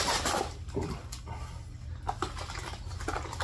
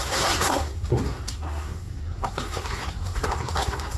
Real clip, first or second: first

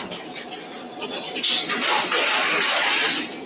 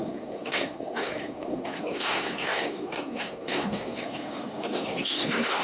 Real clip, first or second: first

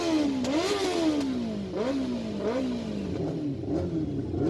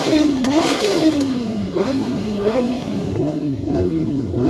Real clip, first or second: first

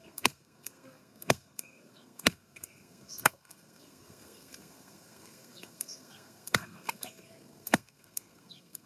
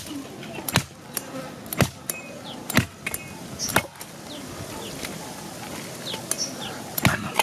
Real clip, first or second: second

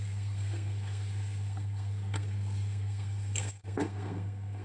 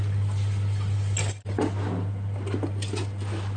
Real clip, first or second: second